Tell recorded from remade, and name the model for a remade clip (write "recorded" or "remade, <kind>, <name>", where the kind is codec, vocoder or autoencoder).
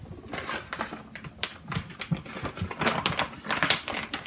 recorded